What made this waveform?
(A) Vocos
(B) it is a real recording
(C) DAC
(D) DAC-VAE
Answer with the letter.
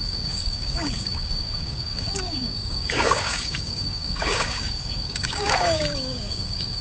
C